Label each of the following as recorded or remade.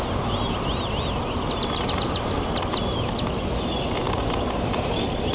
recorded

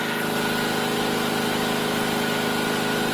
recorded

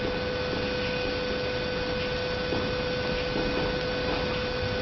recorded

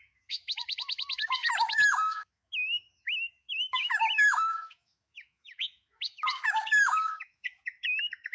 remade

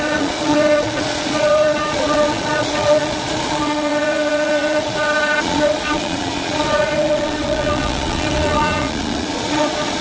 remade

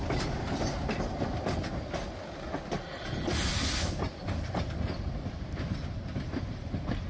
recorded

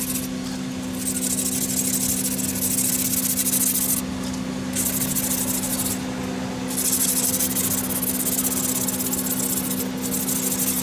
recorded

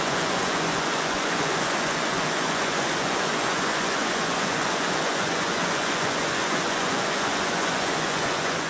remade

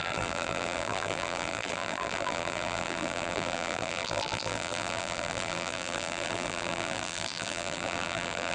remade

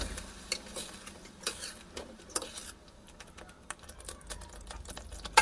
recorded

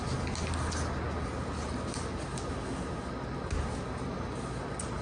recorded